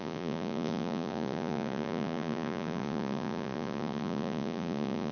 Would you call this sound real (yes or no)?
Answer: no